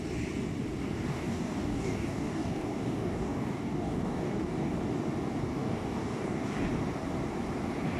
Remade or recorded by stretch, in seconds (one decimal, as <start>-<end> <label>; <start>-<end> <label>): 0.0-1.1 recorded; 1.1-4.8 remade; 4.8-5.5 recorded; 5.5-6.6 remade; 6.6-8.0 recorded